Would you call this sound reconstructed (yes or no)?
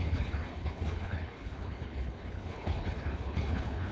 yes